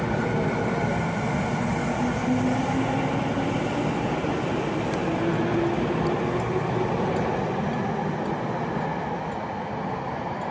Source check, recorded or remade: recorded